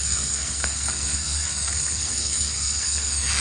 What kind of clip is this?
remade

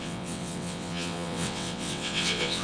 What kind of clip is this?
remade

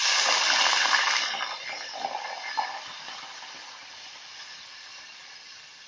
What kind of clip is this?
recorded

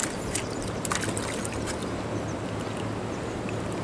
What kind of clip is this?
recorded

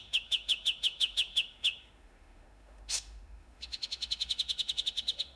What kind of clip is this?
remade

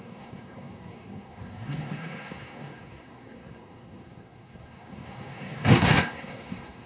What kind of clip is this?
remade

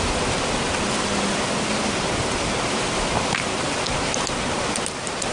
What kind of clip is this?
recorded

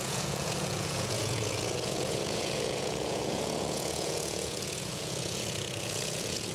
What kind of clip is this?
remade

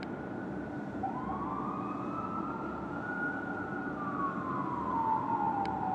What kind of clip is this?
recorded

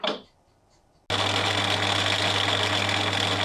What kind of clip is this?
recorded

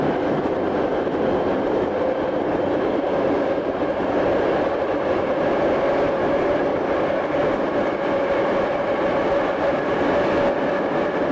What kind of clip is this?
recorded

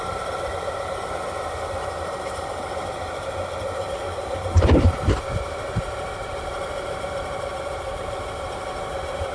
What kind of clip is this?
remade